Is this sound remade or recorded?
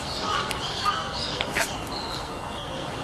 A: remade